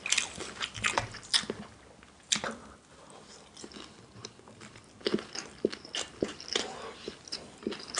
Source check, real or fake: real